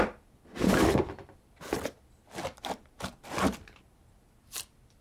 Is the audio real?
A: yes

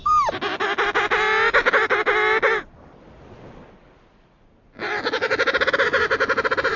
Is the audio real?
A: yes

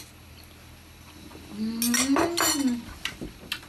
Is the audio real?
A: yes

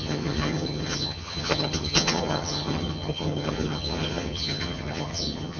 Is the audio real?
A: no